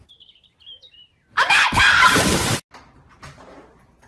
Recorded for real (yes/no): yes